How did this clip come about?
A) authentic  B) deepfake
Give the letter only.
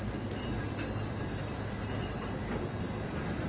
A